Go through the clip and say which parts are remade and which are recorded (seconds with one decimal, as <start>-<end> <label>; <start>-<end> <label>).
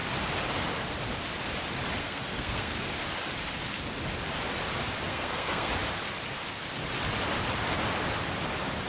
0.0-2.0 recorded; 2.0-2.7 remade; 2.7-5.1 recorded; 5.1-5.7 remade; 5.7-8.9 recorded